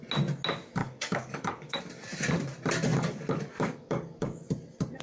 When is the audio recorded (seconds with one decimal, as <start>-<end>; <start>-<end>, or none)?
0.0-0.8; 1.8-2.9; 4.5-5.0